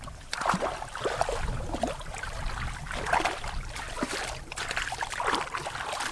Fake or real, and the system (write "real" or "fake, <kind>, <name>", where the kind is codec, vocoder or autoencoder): real